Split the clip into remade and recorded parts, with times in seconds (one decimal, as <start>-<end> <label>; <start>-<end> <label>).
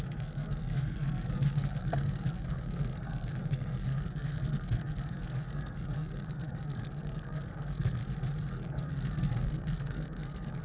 0.0-8.0 remade; 8.0-8.5 recorded; 8.5-10.6 remade